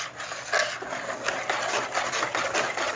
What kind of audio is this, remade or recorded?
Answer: recorded